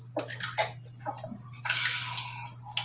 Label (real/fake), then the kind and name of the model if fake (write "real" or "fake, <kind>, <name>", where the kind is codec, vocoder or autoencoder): real